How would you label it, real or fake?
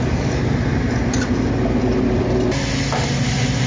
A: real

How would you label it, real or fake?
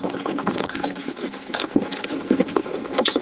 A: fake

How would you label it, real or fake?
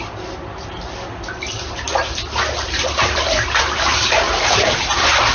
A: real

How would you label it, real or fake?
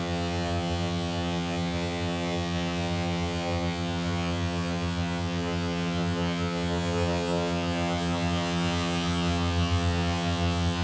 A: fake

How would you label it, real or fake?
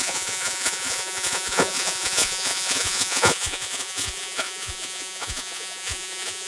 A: fake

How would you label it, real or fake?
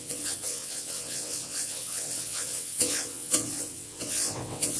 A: fake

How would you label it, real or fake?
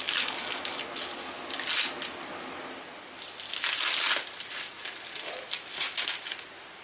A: real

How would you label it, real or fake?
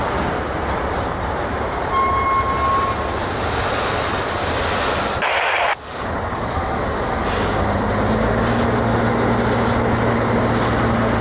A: real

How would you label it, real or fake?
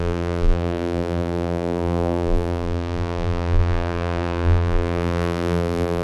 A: fake